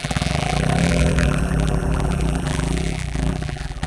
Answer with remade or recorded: remade